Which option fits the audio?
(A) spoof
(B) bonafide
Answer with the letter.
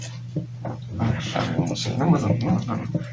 B